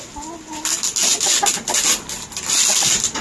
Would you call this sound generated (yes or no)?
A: no